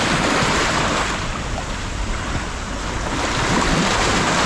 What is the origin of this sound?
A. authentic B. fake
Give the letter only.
A